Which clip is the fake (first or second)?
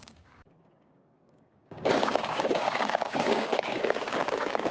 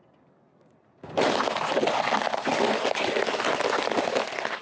first